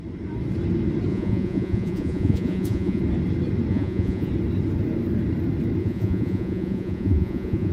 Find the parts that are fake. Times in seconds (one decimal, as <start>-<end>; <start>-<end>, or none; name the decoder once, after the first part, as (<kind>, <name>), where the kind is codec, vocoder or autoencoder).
1.1-3.0 (vocoder, Vocos); 3.7-4.3; 5.8-7.7

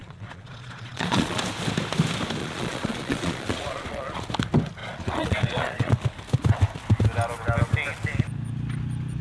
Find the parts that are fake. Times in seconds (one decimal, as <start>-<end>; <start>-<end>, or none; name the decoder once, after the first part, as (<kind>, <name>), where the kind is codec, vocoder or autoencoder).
0.0-1.4 (vocoder, Vocos); 2.4-4.2; 4.8-5.9

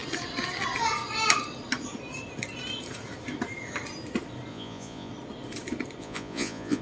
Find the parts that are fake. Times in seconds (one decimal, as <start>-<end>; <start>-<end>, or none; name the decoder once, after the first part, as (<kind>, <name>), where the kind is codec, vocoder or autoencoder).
4.5-5.1 (vocoder, Vocos); 6.0-6.8